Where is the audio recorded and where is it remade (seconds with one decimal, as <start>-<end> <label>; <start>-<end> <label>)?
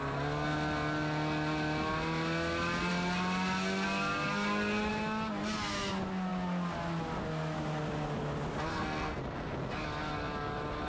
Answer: 0.0-8.7 recorded; 8.7-9.2 remade; 9.2-10.9 recorded